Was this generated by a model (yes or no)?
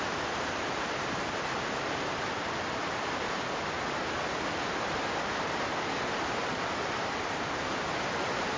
no